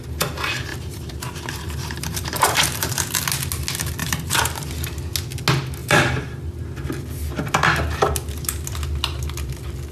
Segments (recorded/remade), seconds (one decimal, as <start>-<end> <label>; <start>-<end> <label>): 0.0-0.7 recorded; 0.7-3.0 remade; 3.0-4.0 recorded; 4.0-4.7 remade; 4.7-5.8 recorded; 5.8-6.5 remade; 6.5-9.9 recorded